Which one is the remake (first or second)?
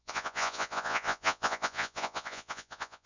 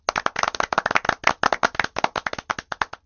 first